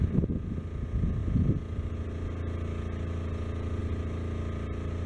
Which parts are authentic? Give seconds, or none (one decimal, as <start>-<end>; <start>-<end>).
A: 0.0-5.1